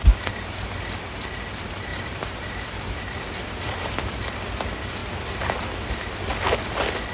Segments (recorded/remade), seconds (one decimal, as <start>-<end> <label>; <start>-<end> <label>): 0.0-1.9 recorded; 1.9-3.9 remade; 3.9-7.1 recorded